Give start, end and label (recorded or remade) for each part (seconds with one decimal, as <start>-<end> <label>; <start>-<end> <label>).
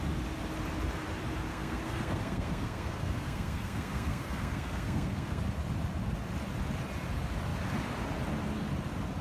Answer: 0.0-1.5 recorded; 1.5-5.4 remade; 5.4-9.2 recorded